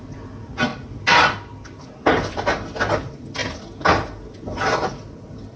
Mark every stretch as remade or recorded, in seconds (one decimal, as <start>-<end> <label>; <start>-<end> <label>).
0.0-5.6 recorded